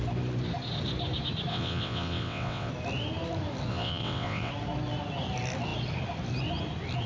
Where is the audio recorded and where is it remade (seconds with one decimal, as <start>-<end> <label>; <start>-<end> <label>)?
0.0-1.5 recorded; 1.5-2.7 remade; 2.7-3.7 recorded; 3.7-4.5 remade; 4.5-7.1 recorded